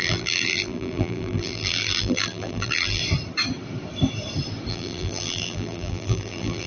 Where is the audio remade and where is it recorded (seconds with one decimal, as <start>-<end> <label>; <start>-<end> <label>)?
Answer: 0.0-3.0 remade; 3.0-4.7 recorded; 4.7-6.7 remade

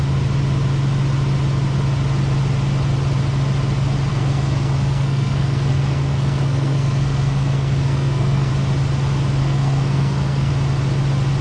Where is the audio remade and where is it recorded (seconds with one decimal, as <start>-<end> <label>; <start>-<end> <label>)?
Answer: 0.0-4.1 recorded; 4.1-8.5 remade; 8.5-9.4 recorded; 9.4-10.5 remade; 10.5-11.4 recorded

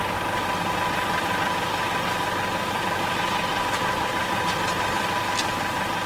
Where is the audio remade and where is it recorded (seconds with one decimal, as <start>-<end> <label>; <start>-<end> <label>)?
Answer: 0.0-3.5 recorded; 3.5-4.4 remade; 4.4-6.1 recorded

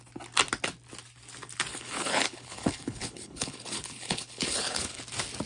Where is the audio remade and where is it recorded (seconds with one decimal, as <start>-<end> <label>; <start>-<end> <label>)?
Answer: 0.0-1.7 recorded; 1.7-5.0 remade; 5.0-5.5 recorded

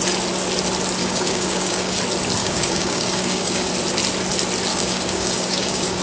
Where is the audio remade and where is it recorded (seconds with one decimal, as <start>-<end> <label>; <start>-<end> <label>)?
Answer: 0.0-1.0 recorded; 1.0-2.0 remade; 2.0-2.4 recorded; 2.4-3.7 remade; 3.7-4.7 recorded; 4.7-6.0 remade

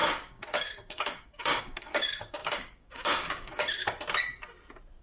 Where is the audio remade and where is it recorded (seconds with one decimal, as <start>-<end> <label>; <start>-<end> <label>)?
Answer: 0.0-3.8 remade; 3.8-5.0 recorded